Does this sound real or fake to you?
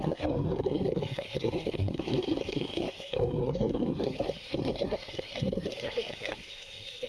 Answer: fake